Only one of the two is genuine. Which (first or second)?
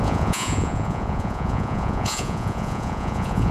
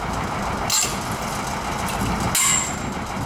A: second